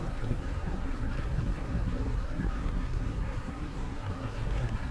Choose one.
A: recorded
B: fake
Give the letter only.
B